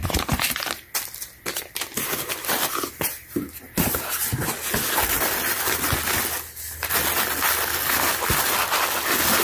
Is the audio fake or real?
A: real